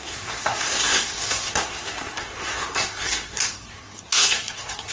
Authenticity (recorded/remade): remade